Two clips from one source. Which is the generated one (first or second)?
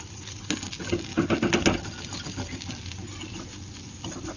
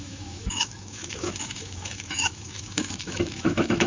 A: second